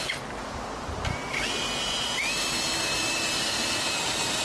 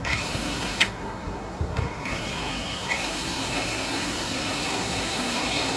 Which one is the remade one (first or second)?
second